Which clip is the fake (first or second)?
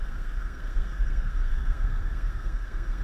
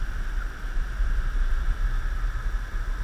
first